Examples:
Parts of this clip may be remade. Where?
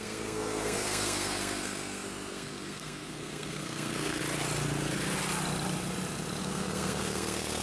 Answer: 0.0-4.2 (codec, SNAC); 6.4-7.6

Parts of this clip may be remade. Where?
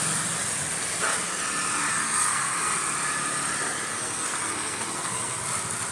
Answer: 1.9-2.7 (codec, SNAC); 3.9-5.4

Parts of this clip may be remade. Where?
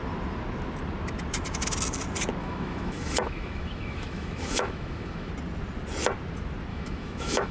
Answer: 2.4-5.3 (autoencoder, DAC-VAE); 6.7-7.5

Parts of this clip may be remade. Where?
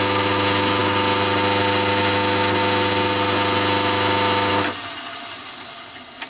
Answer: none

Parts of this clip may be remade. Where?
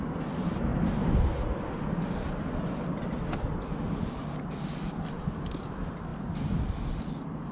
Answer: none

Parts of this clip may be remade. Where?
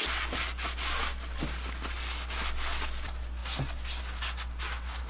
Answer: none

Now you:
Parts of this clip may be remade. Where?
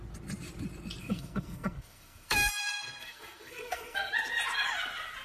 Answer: 1.0-4.1 (codec, SNAC)